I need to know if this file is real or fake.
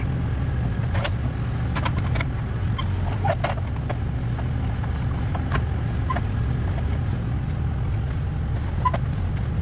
real